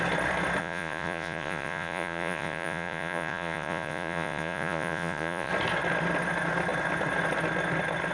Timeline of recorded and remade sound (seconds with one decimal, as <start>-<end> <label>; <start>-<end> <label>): 0.0-0.6 recorded; 0.6-5.5 remade; 5.5-8.1 recorded